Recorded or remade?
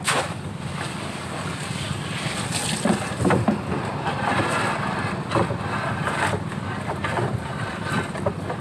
recorded